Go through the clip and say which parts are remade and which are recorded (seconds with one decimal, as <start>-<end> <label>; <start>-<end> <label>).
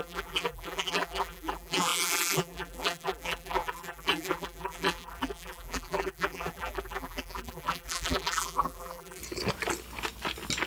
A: 0.0-9.2 remade; 9.2-10.7 recorded